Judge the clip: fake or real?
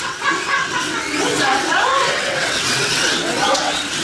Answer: fake